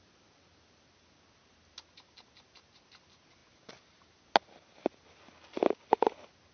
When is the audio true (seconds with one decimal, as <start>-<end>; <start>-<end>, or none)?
0.0-6.5